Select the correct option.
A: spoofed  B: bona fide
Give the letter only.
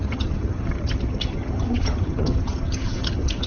A